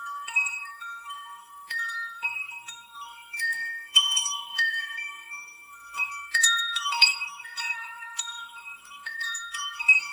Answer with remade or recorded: remade